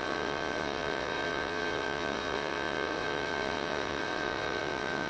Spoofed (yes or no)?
yes